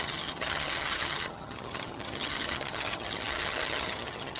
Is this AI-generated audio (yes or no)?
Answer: yes